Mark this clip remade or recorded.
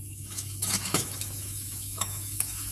remade